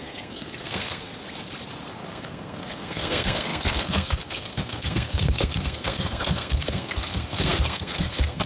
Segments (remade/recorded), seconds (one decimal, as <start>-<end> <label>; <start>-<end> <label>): 0.0-1.1 remade; 1.1-1.9 recorded; 1.9-8.5 remade